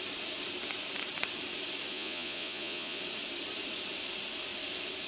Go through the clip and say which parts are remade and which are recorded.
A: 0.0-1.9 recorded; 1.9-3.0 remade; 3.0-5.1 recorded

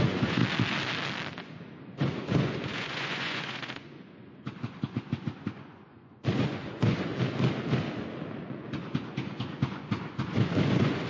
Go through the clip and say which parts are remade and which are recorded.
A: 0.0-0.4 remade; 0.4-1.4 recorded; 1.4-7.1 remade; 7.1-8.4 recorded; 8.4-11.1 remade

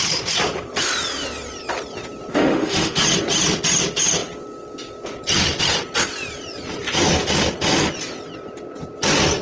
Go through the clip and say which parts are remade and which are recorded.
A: 0.0-2.3 recorded; 2.3-3.0 remade; 3.0-9.4 recorded

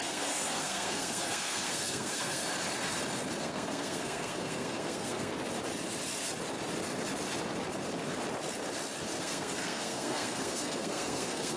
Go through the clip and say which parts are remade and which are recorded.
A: 0.0-2.4 remade; 2.4-3.4 recorded; 3.4-5.3 remade; 5.3-9.2 recorded; 9.2-11.6 remade